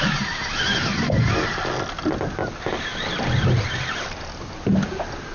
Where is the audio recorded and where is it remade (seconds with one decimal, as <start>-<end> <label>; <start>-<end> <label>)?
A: 0.0-5.3 recorded